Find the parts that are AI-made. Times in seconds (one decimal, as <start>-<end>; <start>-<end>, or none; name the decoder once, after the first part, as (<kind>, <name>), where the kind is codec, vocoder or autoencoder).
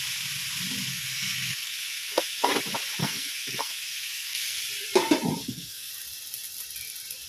0.9-2.5 (codec, SNAC); 3.0-4.6; 5.4-5.9